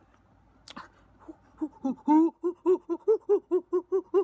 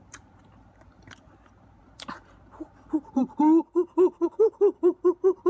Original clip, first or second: first